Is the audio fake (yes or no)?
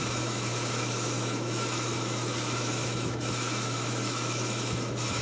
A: yes